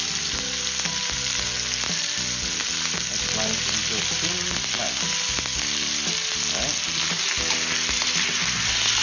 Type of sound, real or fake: real